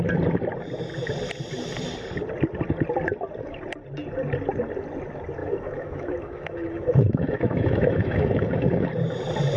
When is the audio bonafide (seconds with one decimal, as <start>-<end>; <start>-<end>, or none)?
0.0-5.4; 8.9-9.6